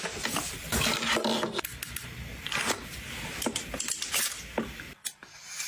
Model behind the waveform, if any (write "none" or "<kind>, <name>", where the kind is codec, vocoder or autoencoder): none